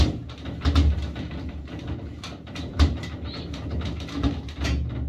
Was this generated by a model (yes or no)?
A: no